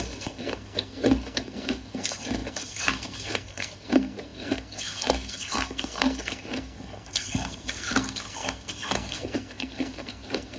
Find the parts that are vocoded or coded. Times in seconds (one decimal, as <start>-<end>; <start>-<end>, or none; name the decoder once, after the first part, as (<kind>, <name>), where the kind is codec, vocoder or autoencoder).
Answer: 0.0-10.6 (codec, SNAC)